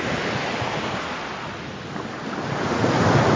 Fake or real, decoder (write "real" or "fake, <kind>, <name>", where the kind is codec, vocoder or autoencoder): real